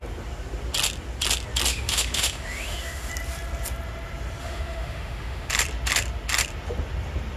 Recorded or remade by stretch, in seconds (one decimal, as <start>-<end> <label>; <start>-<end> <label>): 0.0-1.7 recorded; 1.7-3.1 remade; 3.1-4.4 recorded; 4.4-5.5 remade; 5.5-7.4 recorded